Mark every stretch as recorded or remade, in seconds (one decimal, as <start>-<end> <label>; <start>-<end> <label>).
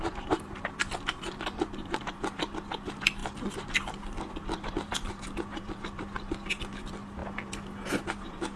0.0-8.6 recorded